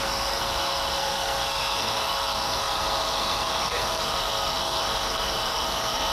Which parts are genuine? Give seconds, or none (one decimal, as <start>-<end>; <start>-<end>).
none